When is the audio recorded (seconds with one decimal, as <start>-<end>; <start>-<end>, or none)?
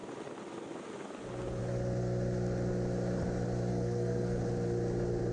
0.0-3.7; 4.4-5.3